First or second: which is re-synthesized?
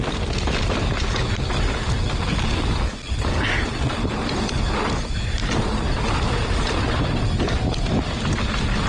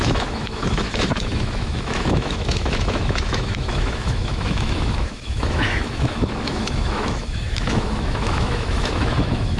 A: second